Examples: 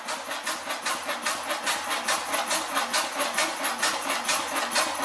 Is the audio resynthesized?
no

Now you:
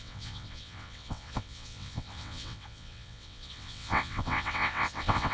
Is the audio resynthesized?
yes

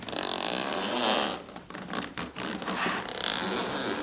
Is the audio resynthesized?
no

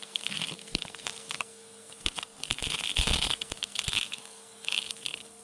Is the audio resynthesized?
yes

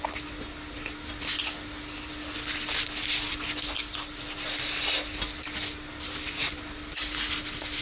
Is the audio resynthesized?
no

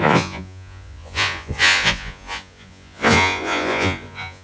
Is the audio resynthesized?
yes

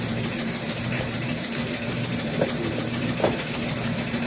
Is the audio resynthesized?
yes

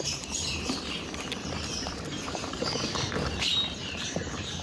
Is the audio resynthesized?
yes